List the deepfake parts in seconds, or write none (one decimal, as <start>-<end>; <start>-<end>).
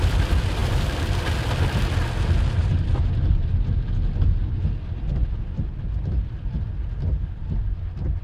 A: none